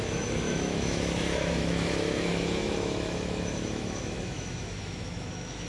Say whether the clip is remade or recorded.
remade